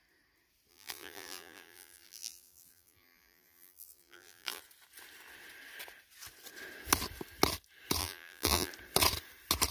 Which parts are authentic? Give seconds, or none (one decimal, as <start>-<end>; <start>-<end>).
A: 0.0-0.7; 4.6-8.0; 8.7-9.7